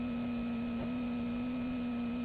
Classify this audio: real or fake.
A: real